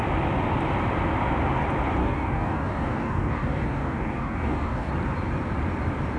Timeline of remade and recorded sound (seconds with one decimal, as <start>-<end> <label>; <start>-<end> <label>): 0.0-2.0 recorded; 2.0-4.9 remade; 4.9-6.2 recorded